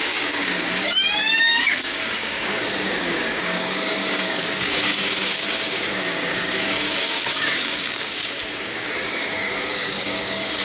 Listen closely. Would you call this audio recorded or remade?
remade